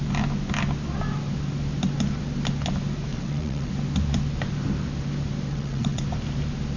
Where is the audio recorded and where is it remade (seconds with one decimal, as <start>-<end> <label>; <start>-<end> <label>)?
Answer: 0.0-3.1 recorded; 3.1-3.7 remade; 3.7-5.5 recorded; 5.5-6.0 remade; 6.0-6.8 recorded